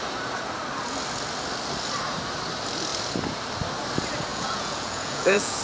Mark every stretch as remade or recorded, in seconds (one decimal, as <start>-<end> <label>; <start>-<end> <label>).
0.0-4.3 recorded; 4.3-5.6 remade

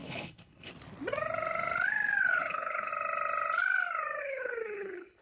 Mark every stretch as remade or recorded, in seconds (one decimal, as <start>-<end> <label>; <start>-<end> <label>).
0.0-0.7 remade; 0.7-2.2 recorded; 2.2-2.9 remade; 2.9-4.2 recorded; 4.2-5.2 remade

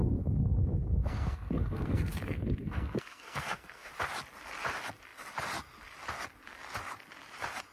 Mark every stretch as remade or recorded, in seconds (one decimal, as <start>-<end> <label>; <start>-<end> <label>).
0.0-3.9 remade; 3.9-7.7 recorded